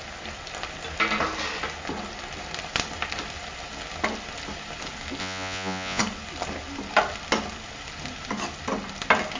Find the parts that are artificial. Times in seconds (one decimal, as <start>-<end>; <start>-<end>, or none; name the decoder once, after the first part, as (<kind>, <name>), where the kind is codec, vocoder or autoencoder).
5.2-6.0 (vocoder, Vocos)